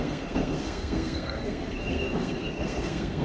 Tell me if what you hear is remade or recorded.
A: remade